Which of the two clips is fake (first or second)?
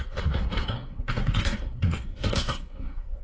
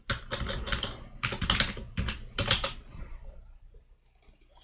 first